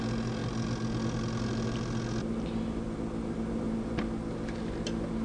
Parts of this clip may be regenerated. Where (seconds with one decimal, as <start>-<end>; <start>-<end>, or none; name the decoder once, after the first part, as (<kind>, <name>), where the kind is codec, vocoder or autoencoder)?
none

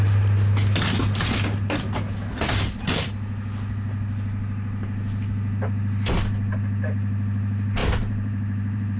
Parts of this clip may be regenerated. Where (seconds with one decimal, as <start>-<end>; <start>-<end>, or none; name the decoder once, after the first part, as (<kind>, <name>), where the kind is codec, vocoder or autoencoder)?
7.8-9.0 (vocoder, BigVGAN v2)

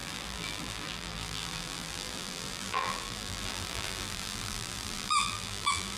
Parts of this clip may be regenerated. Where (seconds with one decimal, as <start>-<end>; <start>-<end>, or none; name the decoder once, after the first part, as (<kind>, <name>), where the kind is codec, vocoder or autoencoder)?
0.0-6.0 (vocoder, BigVGAN v2)